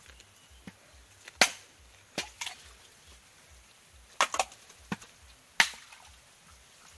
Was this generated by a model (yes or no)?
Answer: no